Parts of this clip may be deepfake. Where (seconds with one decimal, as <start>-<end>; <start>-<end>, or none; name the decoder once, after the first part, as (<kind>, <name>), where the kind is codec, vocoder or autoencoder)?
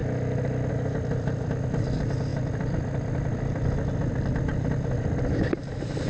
0.7-6.1 (vocoder, BigVGAN v2)